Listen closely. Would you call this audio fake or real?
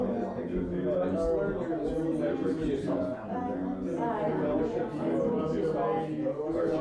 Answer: real